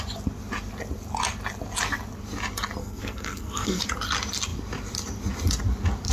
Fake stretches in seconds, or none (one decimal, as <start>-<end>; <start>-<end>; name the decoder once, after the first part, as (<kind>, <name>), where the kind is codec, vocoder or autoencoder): 2.8-3.8 (codec, SNAC)